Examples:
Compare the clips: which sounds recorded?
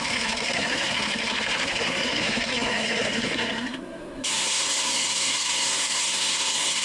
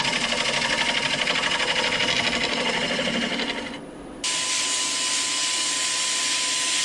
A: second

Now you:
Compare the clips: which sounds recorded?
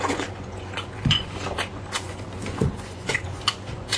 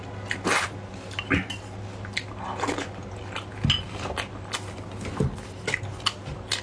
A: second